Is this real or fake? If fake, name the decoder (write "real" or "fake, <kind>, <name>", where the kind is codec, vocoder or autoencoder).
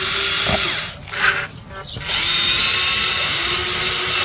real